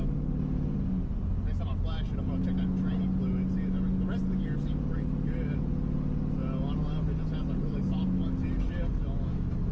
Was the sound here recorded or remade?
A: recorded